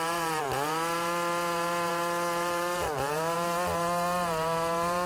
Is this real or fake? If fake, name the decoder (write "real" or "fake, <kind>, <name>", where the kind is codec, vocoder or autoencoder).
fake, vocoder, BigVGAN v2